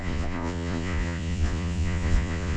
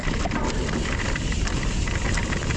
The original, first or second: second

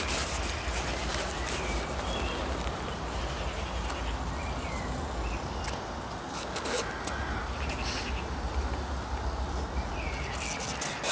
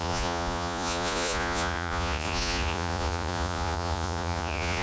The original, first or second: first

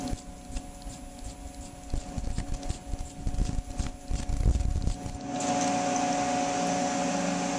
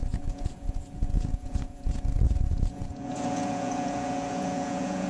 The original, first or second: first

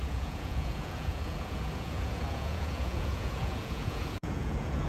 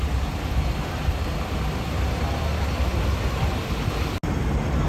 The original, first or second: second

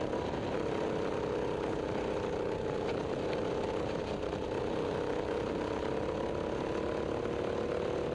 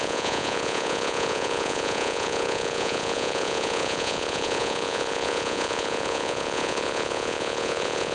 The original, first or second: first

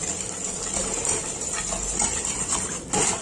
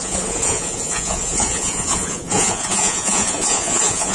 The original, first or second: first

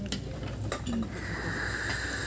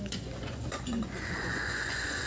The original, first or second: first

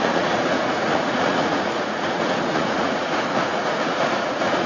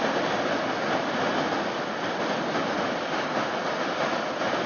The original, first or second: second